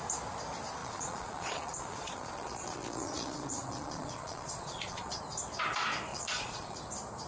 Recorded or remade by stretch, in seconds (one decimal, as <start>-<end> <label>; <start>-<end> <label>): 0.0-0.8 recorded; 0.8-5.2 remade; 5.2-6.1 recorded; 6.1-6.8 remade; 6.8-7.3 recorded